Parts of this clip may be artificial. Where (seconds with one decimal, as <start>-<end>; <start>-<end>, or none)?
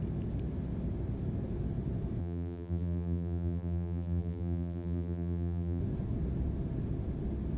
2.2-5.8